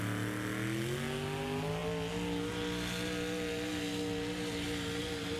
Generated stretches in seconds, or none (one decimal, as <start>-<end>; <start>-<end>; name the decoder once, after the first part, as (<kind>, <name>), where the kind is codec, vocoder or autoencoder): none